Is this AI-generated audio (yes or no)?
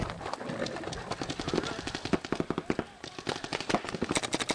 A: no